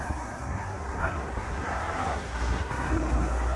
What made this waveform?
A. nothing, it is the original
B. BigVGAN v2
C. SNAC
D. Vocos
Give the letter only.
C